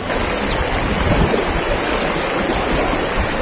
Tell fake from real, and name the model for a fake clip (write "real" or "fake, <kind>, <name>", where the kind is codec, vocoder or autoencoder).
real